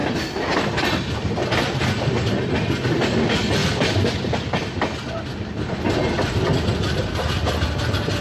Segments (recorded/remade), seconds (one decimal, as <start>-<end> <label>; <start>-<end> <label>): 0.0-8.2 recorded